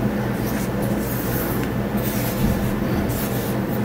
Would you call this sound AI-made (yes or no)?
no